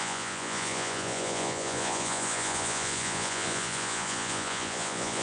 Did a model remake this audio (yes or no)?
yes